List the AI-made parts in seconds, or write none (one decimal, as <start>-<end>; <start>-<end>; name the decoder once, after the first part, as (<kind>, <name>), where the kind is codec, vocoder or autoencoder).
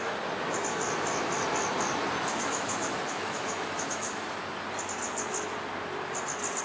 2.3-4.4 (autoencoder, DAC-VAE)